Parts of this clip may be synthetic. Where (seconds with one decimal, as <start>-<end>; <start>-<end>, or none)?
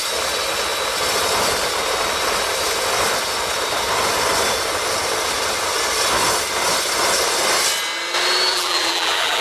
8.5-9.4